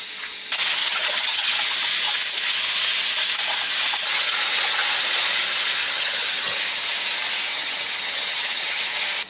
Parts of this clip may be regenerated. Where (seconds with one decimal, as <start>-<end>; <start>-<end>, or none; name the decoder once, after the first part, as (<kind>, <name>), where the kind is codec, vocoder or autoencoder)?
0.8-1.5 (vocoder, HiFi-GAN); 5.8-6.6; 7.5-8.8